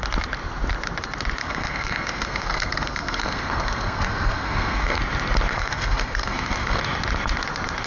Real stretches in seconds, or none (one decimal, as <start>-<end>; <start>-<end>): 0.0-1.4; 5.0-5.5; 6.8-7.9